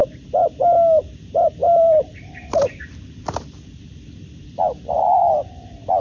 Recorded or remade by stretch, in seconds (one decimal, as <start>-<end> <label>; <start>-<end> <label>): 0.0-1.0 recorded; 1.0-5.2 remade; 5.2-6.0 recorded